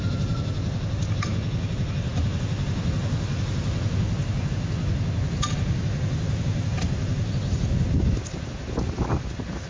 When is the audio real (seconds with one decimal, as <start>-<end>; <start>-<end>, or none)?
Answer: 0.0-9.7